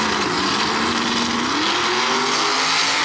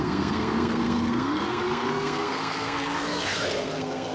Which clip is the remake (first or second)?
second